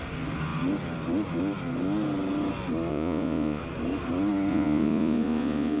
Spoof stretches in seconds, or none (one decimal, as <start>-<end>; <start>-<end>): 2.9-3.6; 4.5-5.8